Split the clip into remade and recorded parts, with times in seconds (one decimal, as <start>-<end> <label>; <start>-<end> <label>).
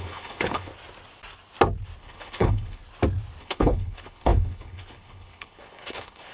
0.0-0.7 remade; 0.7-2.0 recorded; 2.0-2.8 remade; 2.8-3.4 recorded; 3.4-6.3 remade